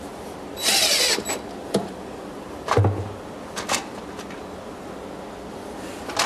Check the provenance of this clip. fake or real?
real